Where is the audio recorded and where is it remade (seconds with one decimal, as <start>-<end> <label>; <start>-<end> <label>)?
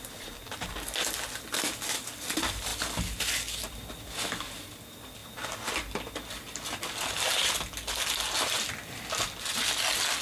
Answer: 0.0-10.2 recorded